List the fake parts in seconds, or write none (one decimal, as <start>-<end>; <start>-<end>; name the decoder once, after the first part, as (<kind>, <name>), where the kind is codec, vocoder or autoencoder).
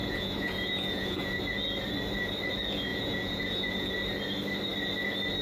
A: 0.0-1.4 (vocoder, Vocos); 2.9-3.9